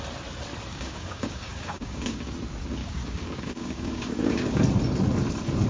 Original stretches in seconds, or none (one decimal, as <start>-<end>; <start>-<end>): 0.0-0.7; 2.3-2.8; 4.6-5.7